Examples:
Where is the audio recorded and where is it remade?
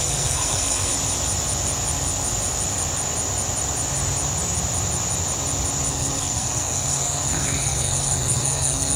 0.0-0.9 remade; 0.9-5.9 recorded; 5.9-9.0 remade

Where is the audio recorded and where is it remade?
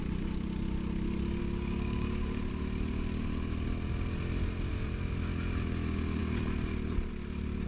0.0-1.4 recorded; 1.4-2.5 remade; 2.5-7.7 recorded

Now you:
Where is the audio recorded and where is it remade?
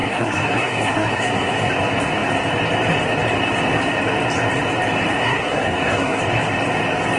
0.0-1.7 remade; 1.7-5.2 recorded; 5.2-6.2 remade; 6.2-7.2 recorded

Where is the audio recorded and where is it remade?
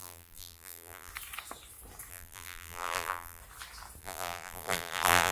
0.0-1.1 remade; 1.1-2.1 recorded; 2.1-3.4 remade; 3.4-4.0 recorded; 4.0-5.3 remade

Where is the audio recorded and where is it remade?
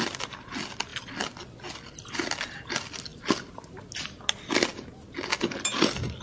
0.0-6.2 recorded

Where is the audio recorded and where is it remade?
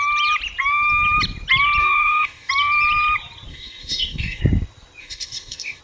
0.0-1.8 recorded; 1.8-2.5 remade; 2.5-3.5 recorded; 3.5-4.4 remade; 4.4-5.0 recorded; 5.0-5.8 remade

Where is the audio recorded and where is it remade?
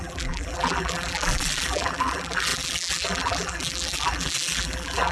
0.0-5.1 remade